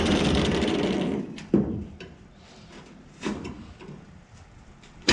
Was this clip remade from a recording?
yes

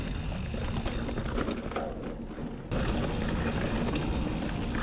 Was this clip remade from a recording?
no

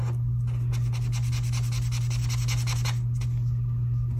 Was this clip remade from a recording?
no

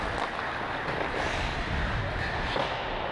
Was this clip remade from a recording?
no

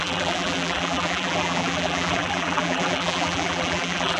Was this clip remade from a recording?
yes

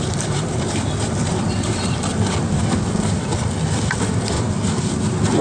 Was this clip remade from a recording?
yes